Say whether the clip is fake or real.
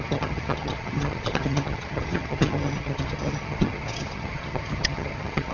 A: fake